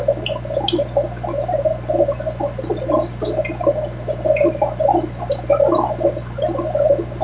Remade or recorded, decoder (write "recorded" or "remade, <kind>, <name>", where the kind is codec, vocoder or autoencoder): recorded